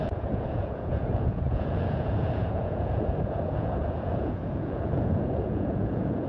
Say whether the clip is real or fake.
fake